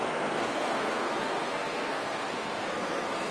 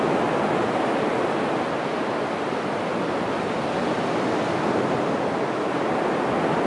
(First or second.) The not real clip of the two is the first